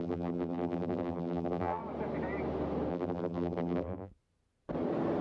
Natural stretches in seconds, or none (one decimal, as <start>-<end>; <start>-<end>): 1.8-2.9; 4.1-5.2